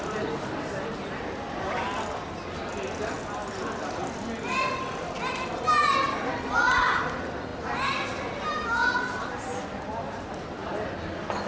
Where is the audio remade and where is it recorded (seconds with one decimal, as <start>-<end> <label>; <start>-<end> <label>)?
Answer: 0.0-11.5 recorded